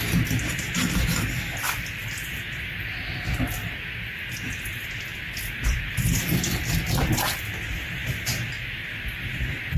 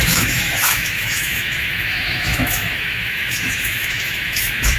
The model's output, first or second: second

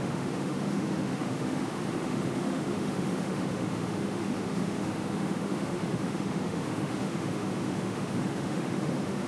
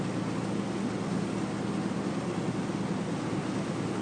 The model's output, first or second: first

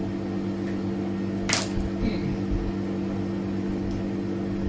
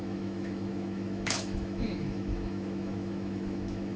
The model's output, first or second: second